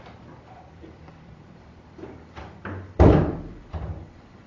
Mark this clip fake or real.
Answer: fake